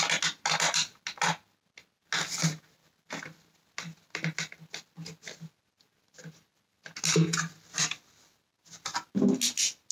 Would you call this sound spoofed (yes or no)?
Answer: no